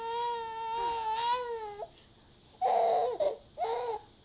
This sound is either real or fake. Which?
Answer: real